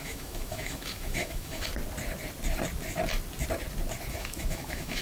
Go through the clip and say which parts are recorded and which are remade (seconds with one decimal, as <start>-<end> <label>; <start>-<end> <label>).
0.0-1.7 remade; 1.7-4.1 recorded; 4.1-5.0 remade